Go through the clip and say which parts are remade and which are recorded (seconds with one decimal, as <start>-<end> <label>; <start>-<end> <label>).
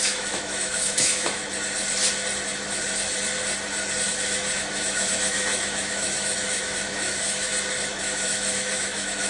0.0-1.4 remade; 1.4-4.1 recorded; 4.1-7.5 remade; 7.5-8.0 recorded; 8.0-9.3 remade